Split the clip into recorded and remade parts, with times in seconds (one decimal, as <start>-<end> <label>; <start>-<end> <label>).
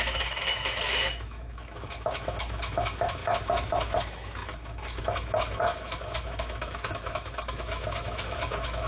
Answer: 0.0-8.9 remade